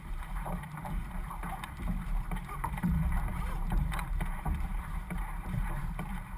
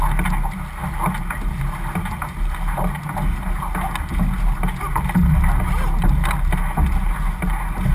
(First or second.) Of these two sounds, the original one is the second